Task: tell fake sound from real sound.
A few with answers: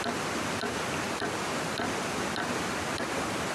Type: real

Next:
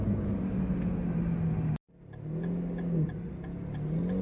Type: real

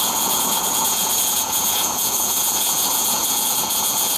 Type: fake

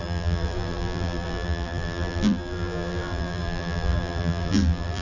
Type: fake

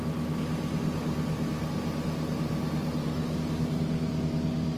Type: real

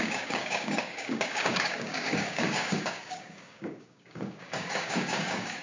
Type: fake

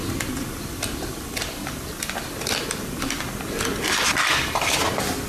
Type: fake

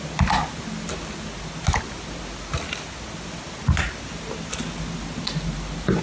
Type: real